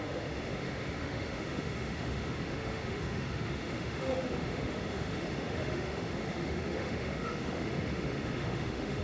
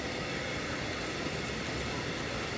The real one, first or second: second